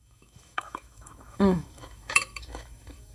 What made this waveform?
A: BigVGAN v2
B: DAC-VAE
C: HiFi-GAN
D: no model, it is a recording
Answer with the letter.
B